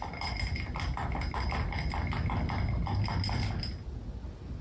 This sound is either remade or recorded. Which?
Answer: recorded